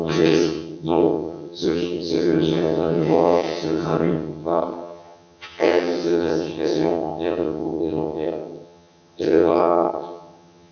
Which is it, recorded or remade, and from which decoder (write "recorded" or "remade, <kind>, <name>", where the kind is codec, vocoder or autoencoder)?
remade, vocoder, HiFi-GAN